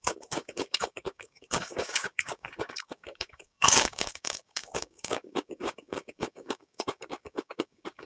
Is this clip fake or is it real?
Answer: fake